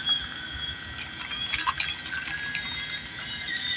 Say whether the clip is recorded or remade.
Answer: recorded